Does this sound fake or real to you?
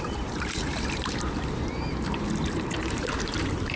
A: fake